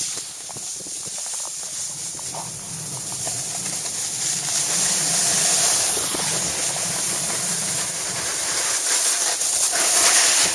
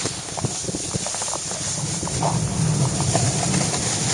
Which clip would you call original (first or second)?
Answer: first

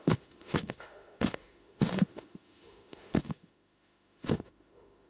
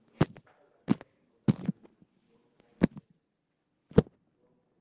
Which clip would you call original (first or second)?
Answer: second